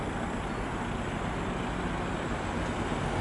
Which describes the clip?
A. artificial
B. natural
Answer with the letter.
B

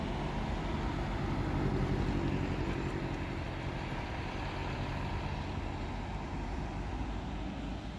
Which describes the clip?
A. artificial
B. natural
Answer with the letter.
B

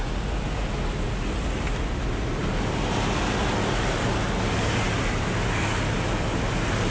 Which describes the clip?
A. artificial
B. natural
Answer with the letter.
B